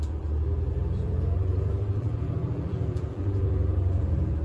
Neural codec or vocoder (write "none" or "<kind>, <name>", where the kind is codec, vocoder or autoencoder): vocoder, BigVGAN v2